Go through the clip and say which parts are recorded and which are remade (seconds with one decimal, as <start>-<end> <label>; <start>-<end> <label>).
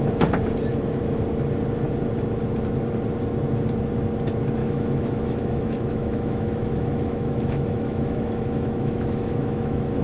0.0-4.6 recorded; 4.6-10.0 remade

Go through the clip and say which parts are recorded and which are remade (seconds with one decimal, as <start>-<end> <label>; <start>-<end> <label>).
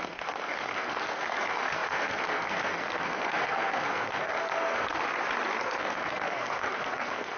0.0-5.0 remade; 5.0-5.6 recorded; 5.6-7.4 remade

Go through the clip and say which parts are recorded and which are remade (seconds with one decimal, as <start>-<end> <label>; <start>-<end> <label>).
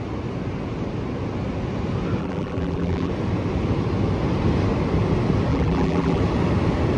0.0-2.2 recorded; 2.2-3.1 remade; 3.1-5.5 recorded; 5.5-6.2 remade; 6.2-7.0 recorded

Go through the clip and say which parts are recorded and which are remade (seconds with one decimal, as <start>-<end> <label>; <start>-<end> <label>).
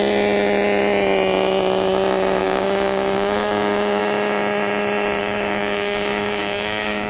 0.0-2.4 recorded; 2.4-4.0 remade; 4.0-5.2 recorded; 5.2-7.1 remade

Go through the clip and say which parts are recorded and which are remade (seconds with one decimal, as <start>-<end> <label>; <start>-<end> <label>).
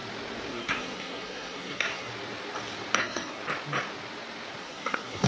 0.0-0.5 recorded; 0.5-2.1 remade; 2.1-3.0 recorded; 3.0-3.4 remade; 3.4-4.6 recorded; 4.6-5.3 remade